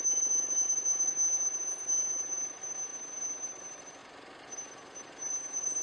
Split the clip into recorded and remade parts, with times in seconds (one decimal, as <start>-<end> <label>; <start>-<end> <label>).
0.0-4.0 remade; 4.0-5.3 recorded; 5.3-5.8 remade